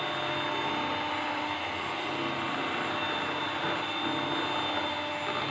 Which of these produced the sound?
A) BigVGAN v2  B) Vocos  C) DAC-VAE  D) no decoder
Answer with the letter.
D